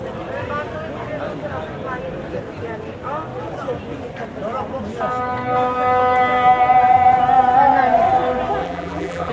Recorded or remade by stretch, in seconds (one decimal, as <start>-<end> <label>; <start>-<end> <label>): 0.0-8.6 recorded; 8.6-9.3 remade